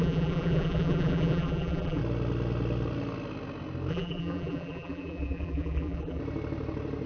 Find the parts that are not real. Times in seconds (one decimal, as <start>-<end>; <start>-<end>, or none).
0.0-2.0; 3.9-6.2